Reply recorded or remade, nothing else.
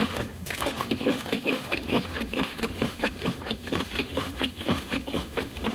remade